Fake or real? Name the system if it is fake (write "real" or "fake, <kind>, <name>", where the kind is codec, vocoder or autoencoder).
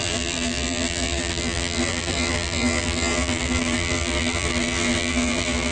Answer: fake, vocoder, BigVGAN v2